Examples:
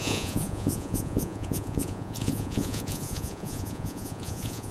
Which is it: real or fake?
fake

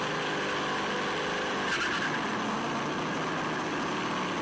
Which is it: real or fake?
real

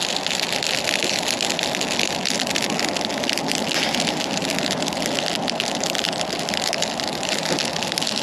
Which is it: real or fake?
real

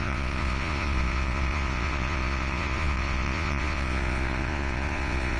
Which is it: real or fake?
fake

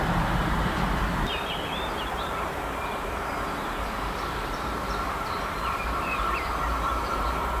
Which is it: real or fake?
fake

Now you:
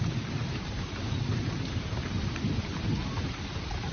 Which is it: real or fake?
fake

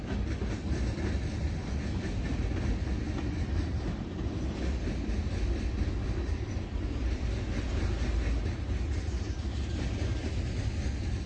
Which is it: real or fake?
real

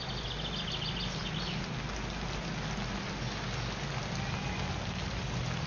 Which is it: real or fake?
real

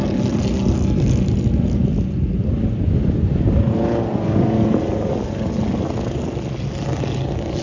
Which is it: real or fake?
real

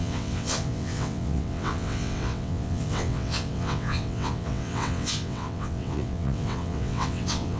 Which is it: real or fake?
fake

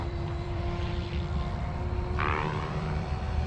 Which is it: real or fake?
fake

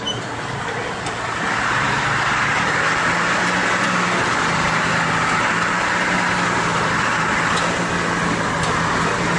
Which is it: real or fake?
real